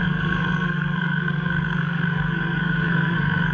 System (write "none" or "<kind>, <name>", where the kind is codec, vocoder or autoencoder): codec, SNAC